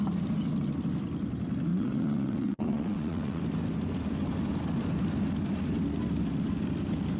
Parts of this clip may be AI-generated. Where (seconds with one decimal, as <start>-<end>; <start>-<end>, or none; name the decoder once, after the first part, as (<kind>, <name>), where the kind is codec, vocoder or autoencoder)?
1.7-3.4 (vocoder, WaveNeXt)